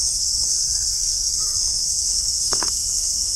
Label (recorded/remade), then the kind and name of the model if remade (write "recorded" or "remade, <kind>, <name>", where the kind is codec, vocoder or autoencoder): remade, codec, SNAC